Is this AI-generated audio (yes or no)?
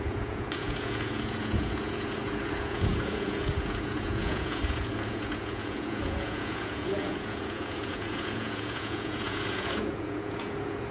yes